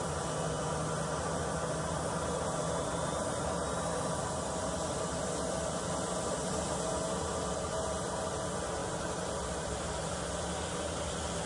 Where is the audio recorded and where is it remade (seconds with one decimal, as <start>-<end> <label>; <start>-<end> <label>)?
0.0-8.8 recorded; 8.8-10.1 remade; 10.1-11.5 recorded